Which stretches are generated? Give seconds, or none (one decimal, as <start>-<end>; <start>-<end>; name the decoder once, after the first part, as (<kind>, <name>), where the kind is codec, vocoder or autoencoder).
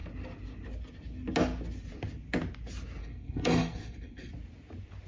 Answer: 3.0-4.3 (codec, SNAC)